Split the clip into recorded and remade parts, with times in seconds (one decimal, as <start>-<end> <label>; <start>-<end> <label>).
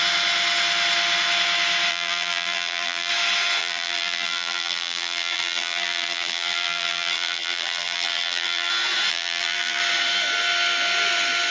0.0-1.9 recorded; 1.9-3.1 remade; 3.1-3.6 recorded; 3.6-8.7 remade; 8.7-9.1 recorded; 9.1-9.8 remade; 9.8-11.5 recorded